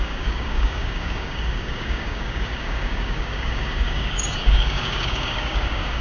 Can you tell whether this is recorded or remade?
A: remade